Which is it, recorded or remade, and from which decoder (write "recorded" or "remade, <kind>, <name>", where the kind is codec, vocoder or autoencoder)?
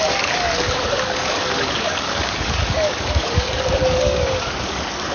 remade, codec, DAC